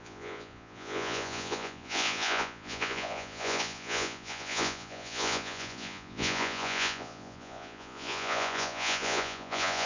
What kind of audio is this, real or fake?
fake